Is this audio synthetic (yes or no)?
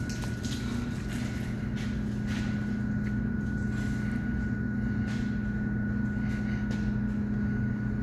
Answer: no